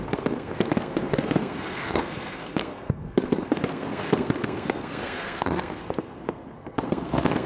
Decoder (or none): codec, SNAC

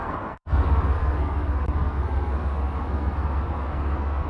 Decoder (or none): codec, SNAC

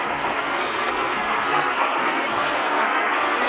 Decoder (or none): codec, SNAC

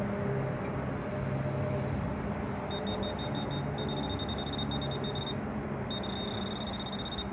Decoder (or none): none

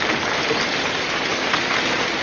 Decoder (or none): none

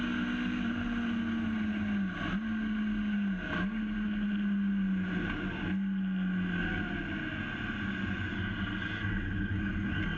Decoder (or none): none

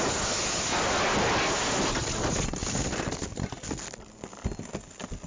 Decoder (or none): none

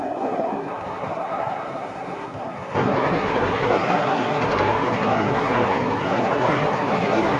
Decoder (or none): codec, SNAC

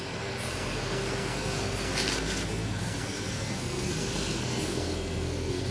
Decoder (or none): codec, SNAC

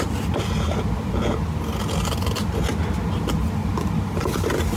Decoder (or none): none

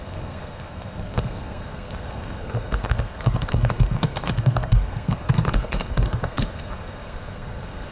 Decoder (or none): codec, SNAC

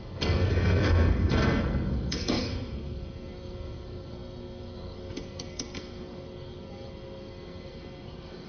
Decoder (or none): codec, SNAC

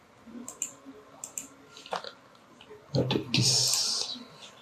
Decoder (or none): none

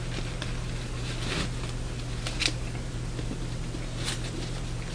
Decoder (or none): none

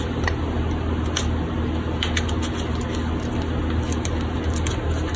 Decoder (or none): none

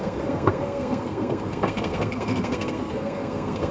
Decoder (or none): codec, SNAC